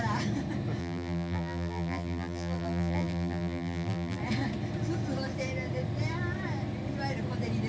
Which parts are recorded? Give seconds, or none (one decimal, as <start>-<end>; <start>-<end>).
0.0-0.8; 4.2-7.7

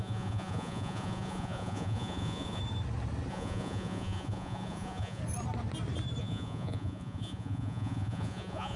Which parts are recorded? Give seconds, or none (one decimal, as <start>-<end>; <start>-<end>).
2.6-3.3; 5.2-6.2

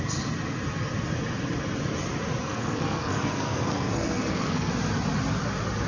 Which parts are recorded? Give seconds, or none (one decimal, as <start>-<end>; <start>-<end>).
0.0-2.4; 4.7-5.9